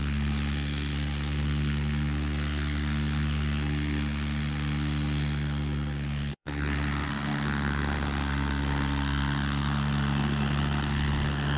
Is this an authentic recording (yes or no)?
no